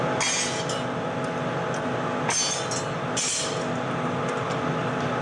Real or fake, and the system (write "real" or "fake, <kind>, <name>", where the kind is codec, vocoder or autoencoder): real